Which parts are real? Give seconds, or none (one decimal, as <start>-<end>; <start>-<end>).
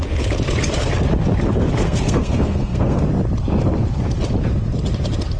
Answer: 0.0-1.8; 3.0-5.4